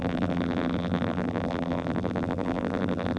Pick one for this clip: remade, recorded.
remade